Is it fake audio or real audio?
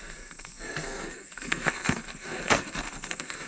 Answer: fake